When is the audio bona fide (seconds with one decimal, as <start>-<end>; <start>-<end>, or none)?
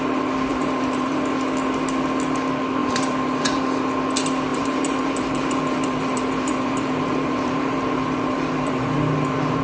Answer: 0.0-0.5; 1.1-2.8; 3.6-4.5